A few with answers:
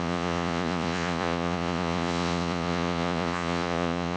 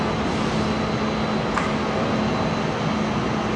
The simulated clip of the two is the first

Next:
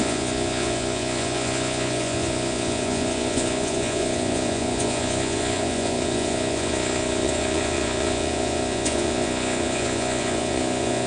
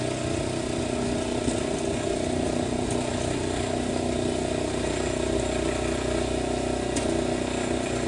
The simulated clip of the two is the first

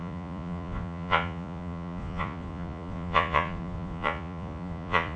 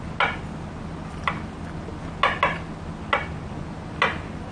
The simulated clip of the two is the first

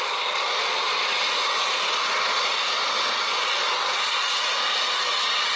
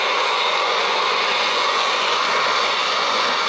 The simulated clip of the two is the second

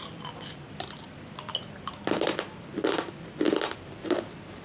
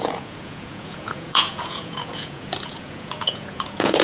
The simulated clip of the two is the second